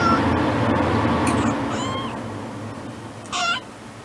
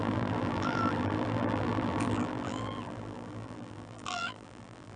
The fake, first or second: second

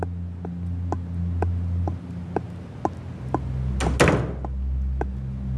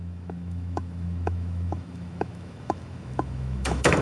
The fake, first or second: second